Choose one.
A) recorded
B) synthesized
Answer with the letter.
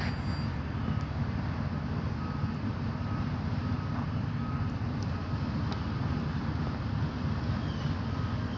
A